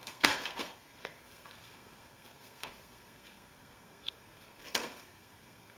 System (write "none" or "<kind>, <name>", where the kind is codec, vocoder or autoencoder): codec, SNAC